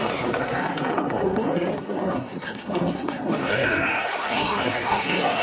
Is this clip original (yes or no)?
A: no